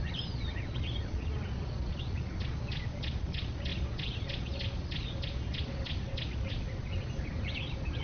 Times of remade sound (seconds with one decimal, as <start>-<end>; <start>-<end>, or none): 0.0-8.0